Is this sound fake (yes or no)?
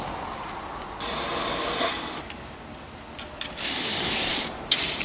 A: no